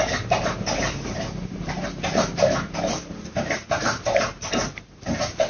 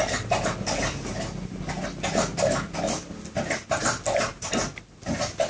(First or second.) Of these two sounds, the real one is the second